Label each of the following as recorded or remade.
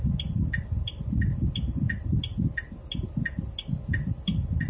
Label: recorded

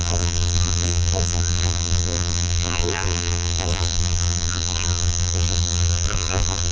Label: remade